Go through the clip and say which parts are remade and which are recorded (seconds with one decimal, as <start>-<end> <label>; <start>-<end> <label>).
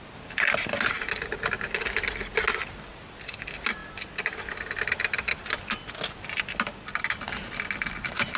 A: 0.0-8.4 recorded